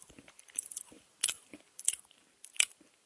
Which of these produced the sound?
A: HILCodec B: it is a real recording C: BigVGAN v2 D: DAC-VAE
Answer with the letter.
C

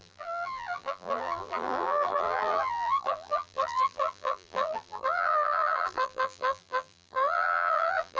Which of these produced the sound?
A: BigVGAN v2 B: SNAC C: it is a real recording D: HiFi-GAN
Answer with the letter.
A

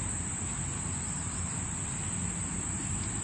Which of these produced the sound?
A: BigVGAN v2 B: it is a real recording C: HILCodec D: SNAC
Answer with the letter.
A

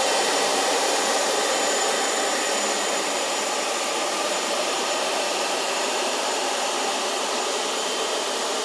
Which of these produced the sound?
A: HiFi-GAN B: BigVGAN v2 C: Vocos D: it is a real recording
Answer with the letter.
B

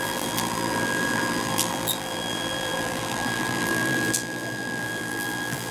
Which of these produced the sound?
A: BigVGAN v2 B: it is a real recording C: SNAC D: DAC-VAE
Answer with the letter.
A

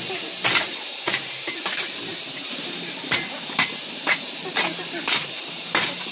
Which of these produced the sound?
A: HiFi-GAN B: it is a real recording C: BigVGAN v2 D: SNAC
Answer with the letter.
C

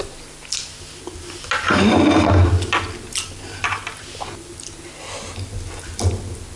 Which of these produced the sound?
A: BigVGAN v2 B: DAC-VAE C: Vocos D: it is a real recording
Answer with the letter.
D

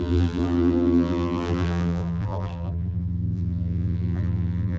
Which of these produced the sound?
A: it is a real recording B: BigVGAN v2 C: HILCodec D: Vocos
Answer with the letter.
B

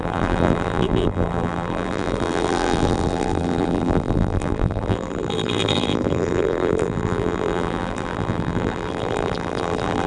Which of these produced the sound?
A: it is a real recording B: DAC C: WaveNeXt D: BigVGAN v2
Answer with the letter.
D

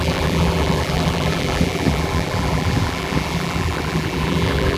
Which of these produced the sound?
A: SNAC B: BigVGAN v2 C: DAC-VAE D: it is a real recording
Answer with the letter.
B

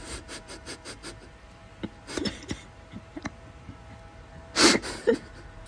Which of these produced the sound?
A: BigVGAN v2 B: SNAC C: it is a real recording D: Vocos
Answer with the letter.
A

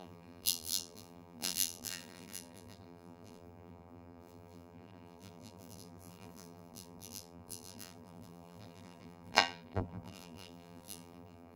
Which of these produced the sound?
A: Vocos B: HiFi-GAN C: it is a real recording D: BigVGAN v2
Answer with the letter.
D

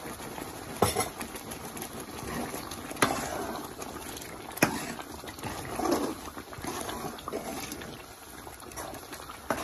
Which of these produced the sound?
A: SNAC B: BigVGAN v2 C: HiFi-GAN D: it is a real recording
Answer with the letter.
D